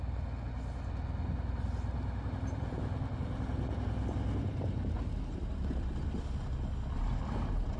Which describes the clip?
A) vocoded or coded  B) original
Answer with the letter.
B